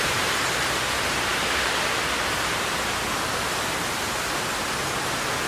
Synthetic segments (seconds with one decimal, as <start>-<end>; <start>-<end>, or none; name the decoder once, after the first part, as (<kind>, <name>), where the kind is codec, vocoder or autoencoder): none